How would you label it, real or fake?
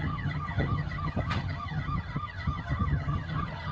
fake